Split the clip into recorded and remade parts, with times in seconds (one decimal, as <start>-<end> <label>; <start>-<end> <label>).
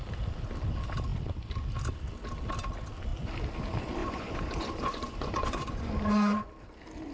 0.0-4.0 recorded; 4.0-5.9 remade; 5.9-7.1 recorded